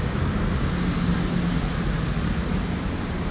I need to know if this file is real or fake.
real